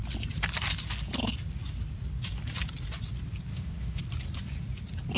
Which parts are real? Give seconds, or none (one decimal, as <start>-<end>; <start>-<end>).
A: 0.0-3.5; 4.0-5.2